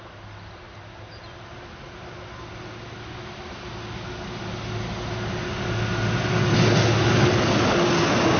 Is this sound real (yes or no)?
yes